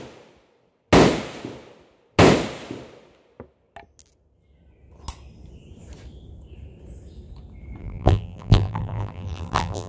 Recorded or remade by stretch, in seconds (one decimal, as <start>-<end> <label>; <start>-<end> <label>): 0.0-7.8 recorded; 7.8-9.9 remade